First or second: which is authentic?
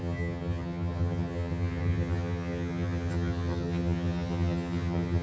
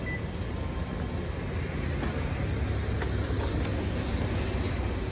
second